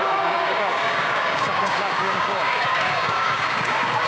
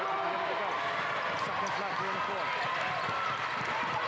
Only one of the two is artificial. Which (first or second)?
first